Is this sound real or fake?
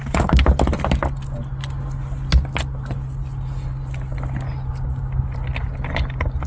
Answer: real